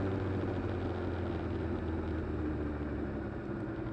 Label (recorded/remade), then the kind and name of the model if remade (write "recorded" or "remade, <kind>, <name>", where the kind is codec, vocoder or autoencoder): recorded